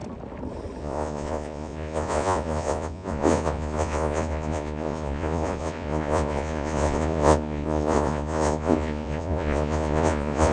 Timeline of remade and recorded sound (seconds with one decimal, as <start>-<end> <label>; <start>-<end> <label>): 0.0-0.8 recorded; 0.8-10.5 remade